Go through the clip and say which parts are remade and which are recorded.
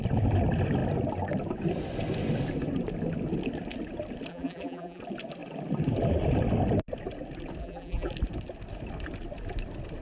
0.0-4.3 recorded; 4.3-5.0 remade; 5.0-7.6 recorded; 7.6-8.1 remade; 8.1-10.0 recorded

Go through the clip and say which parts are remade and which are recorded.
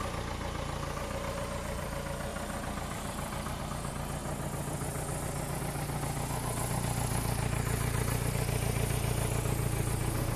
0.0-2.3 recorded; 2.3-3.6 remade; 3.6-10.4 recorded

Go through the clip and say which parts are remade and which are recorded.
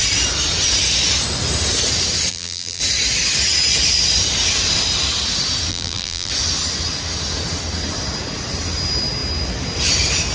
0.0-2.3 recorded; 2.3-2.8 remade; 2.8-5.7 recorded; 5.7-6.3 remade; 6.3-10.3 recorded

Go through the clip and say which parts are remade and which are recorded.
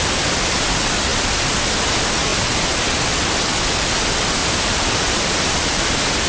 0.0-4.4 recorded; 4.4-5.8 remade; 5.8-6.3 recorded